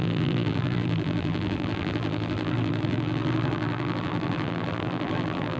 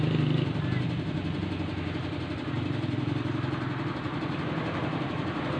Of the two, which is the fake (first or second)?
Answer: first